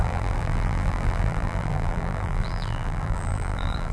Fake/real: fake